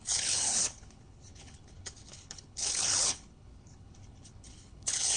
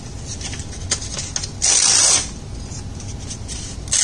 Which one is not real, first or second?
first